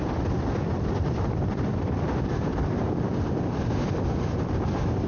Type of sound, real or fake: fake